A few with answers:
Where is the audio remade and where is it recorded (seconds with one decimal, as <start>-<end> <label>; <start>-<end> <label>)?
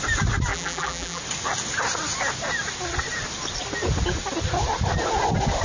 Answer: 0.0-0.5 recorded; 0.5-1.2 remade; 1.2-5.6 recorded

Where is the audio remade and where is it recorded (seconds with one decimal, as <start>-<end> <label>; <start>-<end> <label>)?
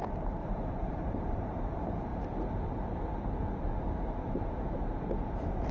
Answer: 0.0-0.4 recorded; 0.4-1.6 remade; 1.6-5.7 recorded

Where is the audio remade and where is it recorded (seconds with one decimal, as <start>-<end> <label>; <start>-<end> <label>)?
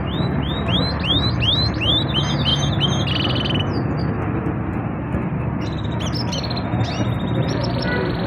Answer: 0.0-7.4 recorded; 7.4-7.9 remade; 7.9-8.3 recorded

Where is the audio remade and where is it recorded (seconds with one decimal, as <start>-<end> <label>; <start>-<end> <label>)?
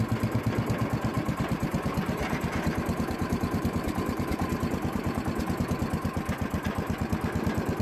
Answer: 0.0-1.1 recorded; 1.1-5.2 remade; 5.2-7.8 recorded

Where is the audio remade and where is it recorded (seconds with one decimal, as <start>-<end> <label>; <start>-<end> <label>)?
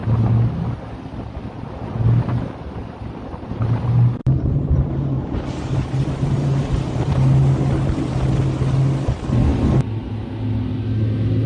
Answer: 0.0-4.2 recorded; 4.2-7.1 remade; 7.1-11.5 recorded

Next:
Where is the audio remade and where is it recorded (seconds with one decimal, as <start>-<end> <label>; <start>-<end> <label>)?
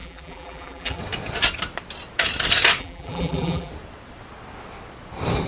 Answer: 0.0-1.0 remade; 1.0-2.8 recorded; 2.8-3.7 remade; 3.7-5.5 recorded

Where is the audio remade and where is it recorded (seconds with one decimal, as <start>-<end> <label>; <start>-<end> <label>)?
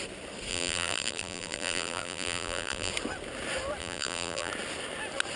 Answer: 0.0-0.5 recorded; 0.5-2.9 remade; 2.9-3.8 recorded; 3.8-4.5 remade; 4.5-5.4 recorded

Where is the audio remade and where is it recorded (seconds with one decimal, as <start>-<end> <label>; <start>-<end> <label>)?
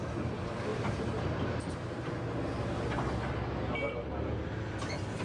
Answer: 0.0-0.7 recorded; 0.7-2.1 remade; 2.1-5.2 recorded